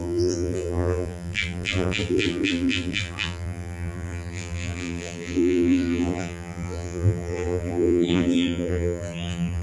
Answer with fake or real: fake